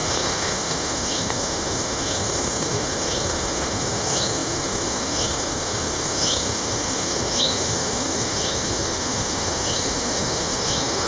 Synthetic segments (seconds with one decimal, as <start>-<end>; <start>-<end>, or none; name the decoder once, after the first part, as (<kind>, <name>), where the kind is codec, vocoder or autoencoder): 0.0-11.1 (autoencoder, DAC-VAE)